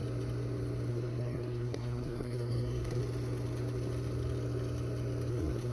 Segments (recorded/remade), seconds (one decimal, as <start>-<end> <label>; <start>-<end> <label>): 0.0-0.9 recorded; 0.9-3.0 remade; 3.0-5.3 recorded; 5.3-5.7 remade